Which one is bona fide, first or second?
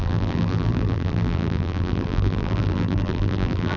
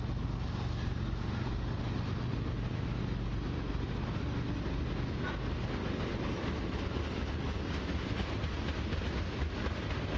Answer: second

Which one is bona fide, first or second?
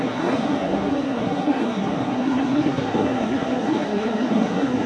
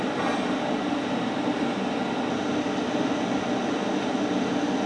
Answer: second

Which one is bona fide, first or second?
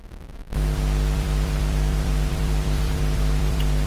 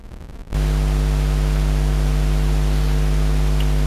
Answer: second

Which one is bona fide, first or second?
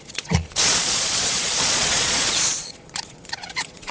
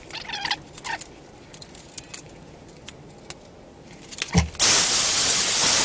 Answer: second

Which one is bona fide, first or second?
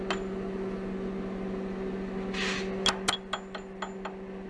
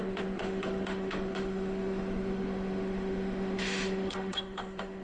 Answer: first